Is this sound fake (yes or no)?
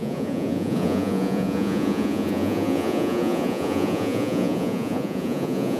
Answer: yes